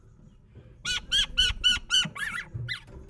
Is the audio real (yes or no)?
yes